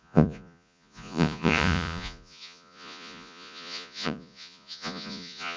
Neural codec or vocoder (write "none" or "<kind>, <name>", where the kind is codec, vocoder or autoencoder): vocoder, Vocos